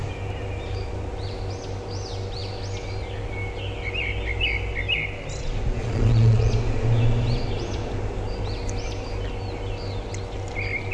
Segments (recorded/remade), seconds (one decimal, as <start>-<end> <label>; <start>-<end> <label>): 0.0-5.8 recorded; 5.8-6.5 remade; 6.5-10.9 recorded